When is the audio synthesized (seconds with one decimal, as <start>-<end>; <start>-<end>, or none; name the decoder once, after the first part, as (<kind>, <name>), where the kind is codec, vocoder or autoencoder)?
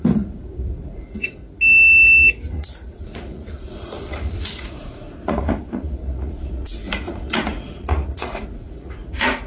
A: 0.0-1.4 (vocoder, Vocos); 2.5-9.5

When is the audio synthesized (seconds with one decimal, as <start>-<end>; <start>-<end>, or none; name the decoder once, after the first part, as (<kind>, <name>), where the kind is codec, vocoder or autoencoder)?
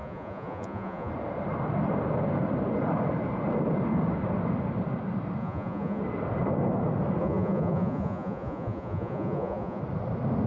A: 0.0-1.1 (vocoder, Vocos); 5.4-6.0; 7.2-9.8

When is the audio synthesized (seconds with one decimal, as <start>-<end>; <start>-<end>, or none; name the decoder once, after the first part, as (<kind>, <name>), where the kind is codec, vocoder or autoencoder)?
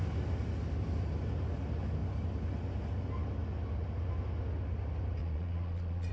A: 5.2-6.1 (vocoder, Vocos)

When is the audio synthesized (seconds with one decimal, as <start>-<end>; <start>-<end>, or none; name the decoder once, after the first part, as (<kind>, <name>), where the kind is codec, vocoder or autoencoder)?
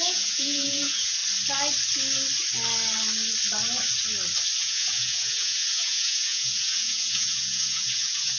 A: 0.0-1.2 (vocoder, Vocos); 4.6-8.4